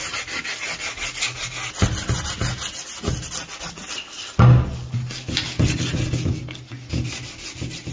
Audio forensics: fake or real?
real